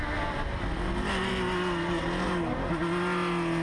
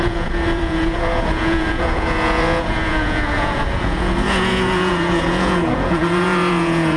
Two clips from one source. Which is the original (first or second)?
first